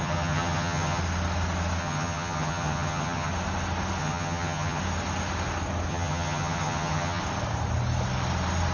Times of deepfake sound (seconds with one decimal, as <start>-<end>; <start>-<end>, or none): 0.0-1.0; 1.8-3.3; 4.0-4.8; 5.9-7.2